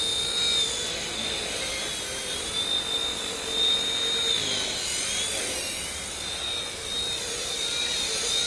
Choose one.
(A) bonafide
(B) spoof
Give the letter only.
A